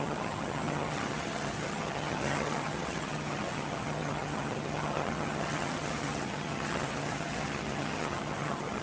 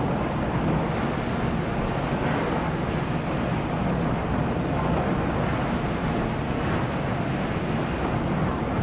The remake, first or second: first